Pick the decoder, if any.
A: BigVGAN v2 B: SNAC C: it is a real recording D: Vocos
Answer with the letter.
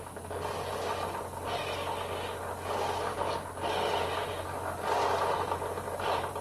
C